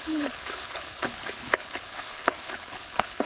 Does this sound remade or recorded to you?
remade